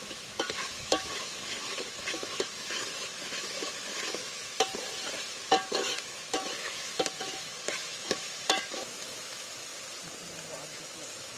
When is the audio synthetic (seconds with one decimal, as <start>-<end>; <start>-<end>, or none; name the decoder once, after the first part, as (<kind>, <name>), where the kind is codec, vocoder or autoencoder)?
0.0-4.7 (autoencoder, DAC-VAE); 5.7-9.7; 10.6-11.4